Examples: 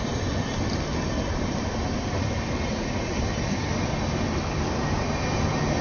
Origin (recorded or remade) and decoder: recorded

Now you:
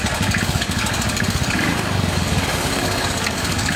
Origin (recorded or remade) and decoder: remade, codec, DAC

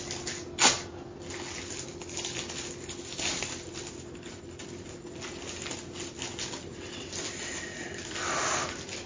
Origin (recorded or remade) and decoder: recorded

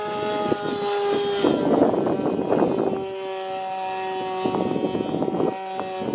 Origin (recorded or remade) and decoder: recorded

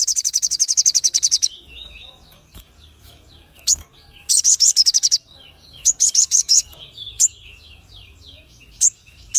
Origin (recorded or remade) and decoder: remade, codec, DAC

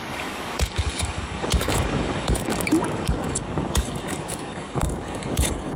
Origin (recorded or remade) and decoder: remade, codec, DAC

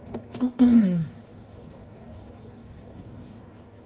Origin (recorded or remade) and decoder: remade, codec, DAC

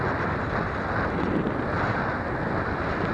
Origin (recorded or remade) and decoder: recorded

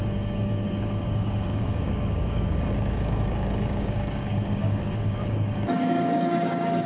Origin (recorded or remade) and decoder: remade, codec, DAC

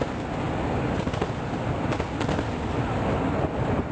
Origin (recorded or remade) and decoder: recorded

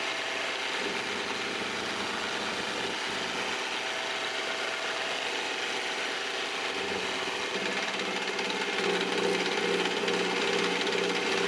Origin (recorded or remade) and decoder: recorded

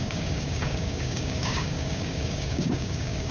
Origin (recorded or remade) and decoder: remade, codec, DAC